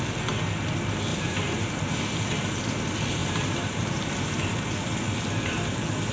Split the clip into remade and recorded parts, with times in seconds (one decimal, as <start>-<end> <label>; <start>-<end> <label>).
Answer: 0.0-1.1 recorded; 1.1-1.7 remade; 1.7-3.2 recorded; 3.2-4.4 remade; 4.4-6.1 recorded